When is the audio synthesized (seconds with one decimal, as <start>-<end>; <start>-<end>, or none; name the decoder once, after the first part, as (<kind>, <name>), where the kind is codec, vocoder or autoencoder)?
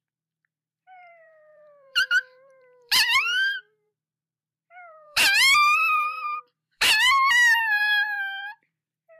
0.0-9.2 (vocoder, BigVGAN v2)